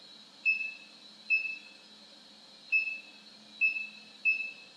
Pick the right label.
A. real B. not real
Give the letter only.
A